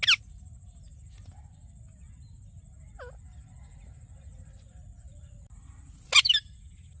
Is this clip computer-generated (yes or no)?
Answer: no